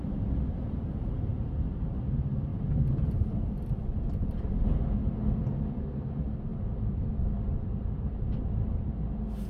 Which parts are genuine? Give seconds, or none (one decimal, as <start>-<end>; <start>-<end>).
0.0-2.5; 4.3-6.5; 8.3-9.5